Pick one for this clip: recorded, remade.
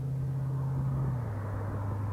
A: recorded